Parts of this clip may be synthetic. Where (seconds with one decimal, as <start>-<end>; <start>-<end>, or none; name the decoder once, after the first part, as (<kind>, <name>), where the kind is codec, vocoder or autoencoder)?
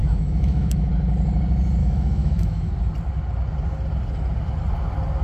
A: 0.0-0.9 (autoencoder, DAC-VAE); 1.8-2.7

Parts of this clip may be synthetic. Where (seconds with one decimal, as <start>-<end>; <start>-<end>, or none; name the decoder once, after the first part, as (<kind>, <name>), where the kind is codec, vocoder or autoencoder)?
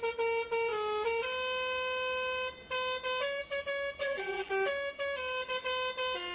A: 4.0-4.5 (vocoder, BigVGAN v2)